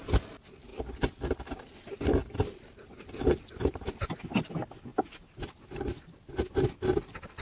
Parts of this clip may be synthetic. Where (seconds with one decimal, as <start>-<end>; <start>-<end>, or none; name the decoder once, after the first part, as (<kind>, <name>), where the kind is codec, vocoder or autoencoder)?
0.7-1.6 (vocoder, BigVGAN v2); 2.2-4.0